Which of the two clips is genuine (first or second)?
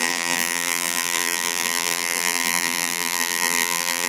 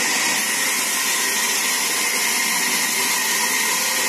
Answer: second